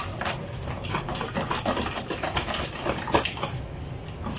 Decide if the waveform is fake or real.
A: fake